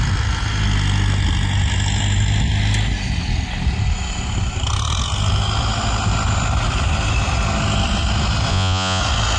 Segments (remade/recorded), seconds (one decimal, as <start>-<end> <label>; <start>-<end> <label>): 0.0-8.5 recorded; 8.5-9.0 remade; 9.0-9.4 recorded